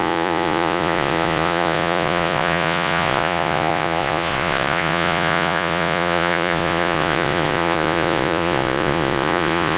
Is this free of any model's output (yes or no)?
no